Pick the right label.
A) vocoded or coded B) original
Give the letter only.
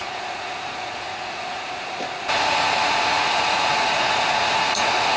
A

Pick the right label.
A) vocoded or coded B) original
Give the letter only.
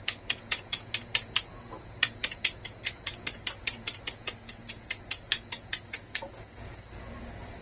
A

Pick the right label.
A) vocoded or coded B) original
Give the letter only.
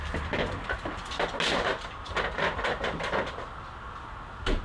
B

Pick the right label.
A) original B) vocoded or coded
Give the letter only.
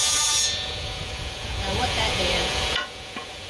B